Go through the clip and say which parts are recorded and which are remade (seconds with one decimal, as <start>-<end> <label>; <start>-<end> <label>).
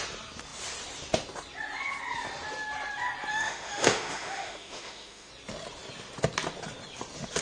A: 0.0-3.3 recorded; 3.3-5.3 remade; 5.3-7.4 recorded